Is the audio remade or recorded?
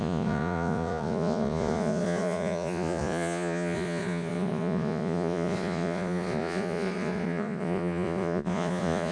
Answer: remade